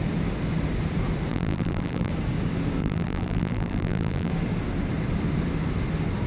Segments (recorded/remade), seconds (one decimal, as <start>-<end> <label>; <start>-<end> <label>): 0.0-1.3 recorded; 1.3-2.1 remade; 2.1-2.8 recorded; 2.8-4.3 remade; 4.3-6.3 recorded